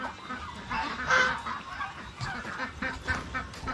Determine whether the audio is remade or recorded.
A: recorded